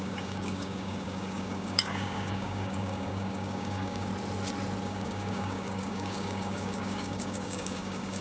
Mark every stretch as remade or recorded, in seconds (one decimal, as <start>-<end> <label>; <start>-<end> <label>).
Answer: 0.0-4.1 remade; 4.1-4.8 recorded; 4.8-8.2 remade